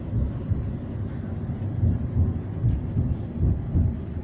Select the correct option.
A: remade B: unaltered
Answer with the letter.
B